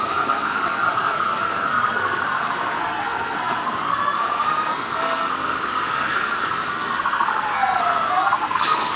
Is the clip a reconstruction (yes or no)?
yes